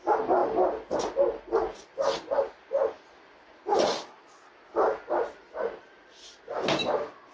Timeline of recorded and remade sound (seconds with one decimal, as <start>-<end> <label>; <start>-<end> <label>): 0.0-7.3 recorded